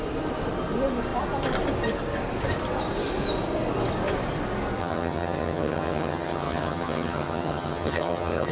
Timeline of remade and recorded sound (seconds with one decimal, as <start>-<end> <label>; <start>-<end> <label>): 0.0-4.8 recorded; 4.8-8.5 remade